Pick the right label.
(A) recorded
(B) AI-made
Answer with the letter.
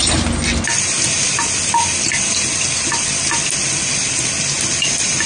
A